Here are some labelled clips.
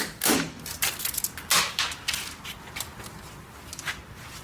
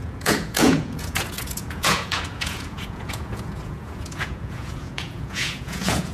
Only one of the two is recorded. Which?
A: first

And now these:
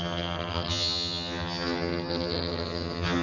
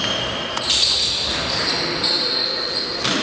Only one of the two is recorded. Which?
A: second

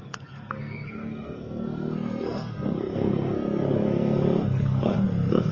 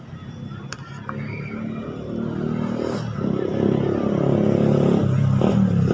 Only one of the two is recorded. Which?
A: second